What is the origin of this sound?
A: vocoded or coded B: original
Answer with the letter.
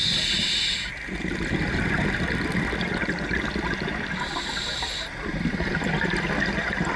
B